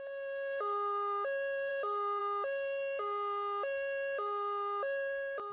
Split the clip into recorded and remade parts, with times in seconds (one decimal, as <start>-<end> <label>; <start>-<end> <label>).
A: 0.0-5.5 recorded